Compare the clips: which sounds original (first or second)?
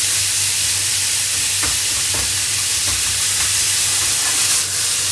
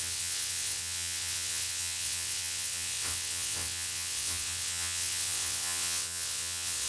first